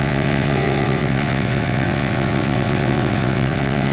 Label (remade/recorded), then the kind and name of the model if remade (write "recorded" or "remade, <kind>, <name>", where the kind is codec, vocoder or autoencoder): remade, vocoder, WaveNeXt